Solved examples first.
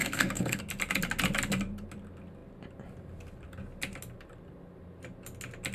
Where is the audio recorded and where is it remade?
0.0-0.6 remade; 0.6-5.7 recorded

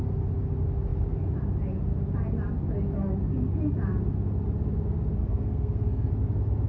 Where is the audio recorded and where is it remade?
0.0-5.2 recorded; 5.2-6.1 remade; 6.1-6.7 recorded

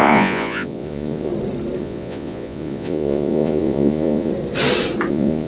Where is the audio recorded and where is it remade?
0.0-1.3 remade; 1.3-1.8 recorded; 1.8-4.3 remade; 4.3-5.1 recorded; 5.1-5.5 remade

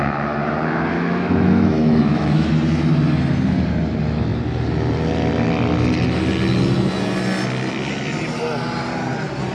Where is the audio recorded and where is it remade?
0.0-0.9 recorded; 0.9-2.5 remade; 2.5-9.5 recorded

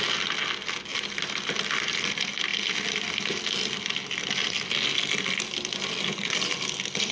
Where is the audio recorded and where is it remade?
0.0-7.1 recorded

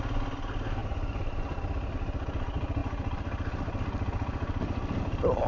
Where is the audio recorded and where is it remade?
0.0-0.8 recorded; 0.8-1.9 remade; 1.9-5.5 recorded

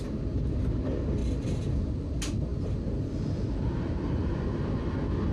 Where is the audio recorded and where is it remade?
0.0-1.2 recorded; 1.2-1.9 remade; 1.9-2.5 recorded; 2.5-4.7 remade; 4.7-5.3 recorded

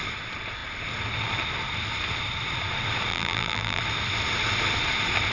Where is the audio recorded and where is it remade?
0.0-3.1 recorded; 3.1-3.8 remade; 3.8-5.3 recorded